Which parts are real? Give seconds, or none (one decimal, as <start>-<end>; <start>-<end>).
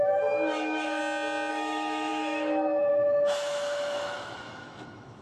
1.0-1.5